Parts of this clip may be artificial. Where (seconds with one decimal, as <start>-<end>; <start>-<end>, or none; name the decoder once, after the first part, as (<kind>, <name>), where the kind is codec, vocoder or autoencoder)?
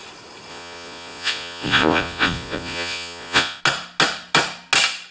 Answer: 0.5-3.6 (vocoder, Vocos)